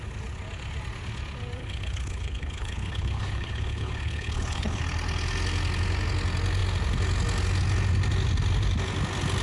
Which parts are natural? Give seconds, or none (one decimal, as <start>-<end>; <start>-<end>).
0.0-1.6; 4.8-9.4